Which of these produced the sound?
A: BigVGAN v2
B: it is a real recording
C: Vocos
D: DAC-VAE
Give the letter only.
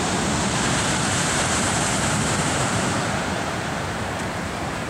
A